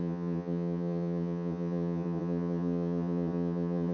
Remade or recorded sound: remade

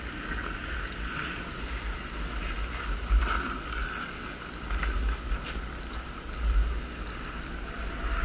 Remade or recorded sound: recorded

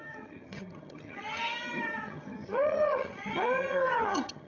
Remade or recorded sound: remade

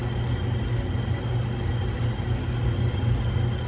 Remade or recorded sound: recorded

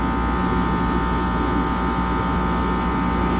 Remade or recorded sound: recorded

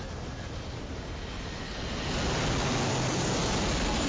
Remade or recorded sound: recorded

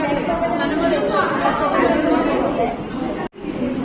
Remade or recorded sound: recorded